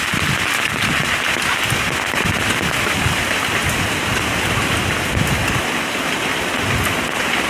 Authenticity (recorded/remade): recorded